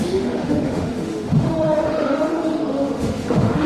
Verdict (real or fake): fake